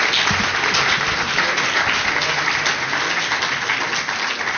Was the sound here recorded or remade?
recorded